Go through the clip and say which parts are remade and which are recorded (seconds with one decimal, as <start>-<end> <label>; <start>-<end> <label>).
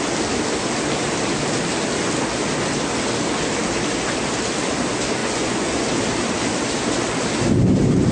0.0-5.2 recorded; 5.2-5.9 remade; 5.9-8.1 recorded